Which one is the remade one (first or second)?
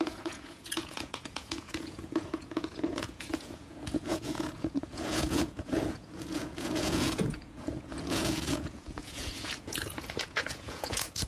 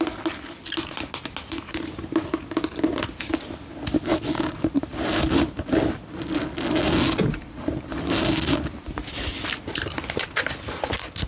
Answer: first